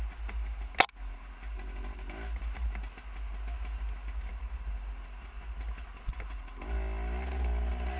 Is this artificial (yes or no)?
no